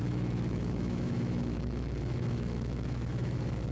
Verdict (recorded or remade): remade